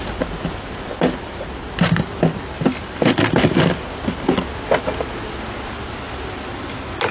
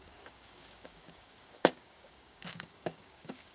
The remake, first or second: second